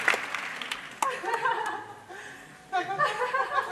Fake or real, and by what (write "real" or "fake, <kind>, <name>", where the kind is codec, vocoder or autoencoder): real